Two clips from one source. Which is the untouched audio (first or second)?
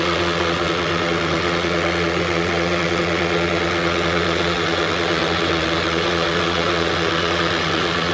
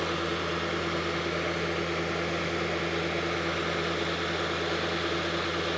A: second